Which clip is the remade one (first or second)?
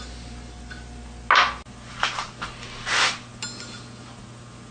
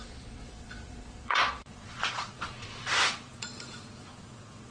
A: second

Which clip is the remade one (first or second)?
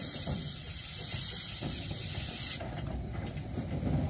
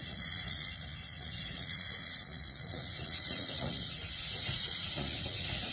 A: second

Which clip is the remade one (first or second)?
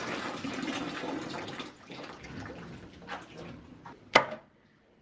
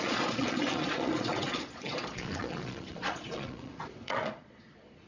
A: second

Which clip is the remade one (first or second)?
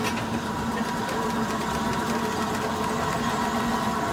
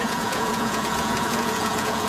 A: second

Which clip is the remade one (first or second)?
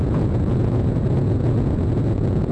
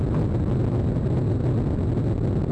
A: first